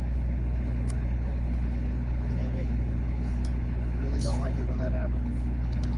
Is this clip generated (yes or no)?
yes